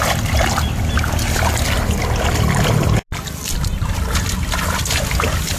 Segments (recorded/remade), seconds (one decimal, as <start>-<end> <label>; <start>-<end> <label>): 0.0-5.6 recorded